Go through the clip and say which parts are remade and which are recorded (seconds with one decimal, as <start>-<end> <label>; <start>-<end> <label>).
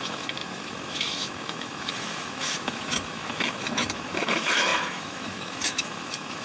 0.0-6.4 remade